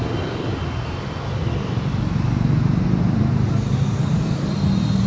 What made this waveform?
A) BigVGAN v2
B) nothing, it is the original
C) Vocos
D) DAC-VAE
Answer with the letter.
B